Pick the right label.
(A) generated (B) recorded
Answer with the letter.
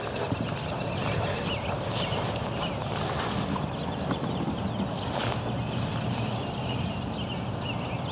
B